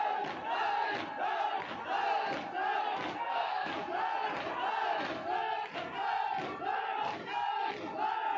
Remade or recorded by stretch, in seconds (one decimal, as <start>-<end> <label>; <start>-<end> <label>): 0.0-3.1 recorded; 3.1-3.7 remade; 3.7-8.4 recorded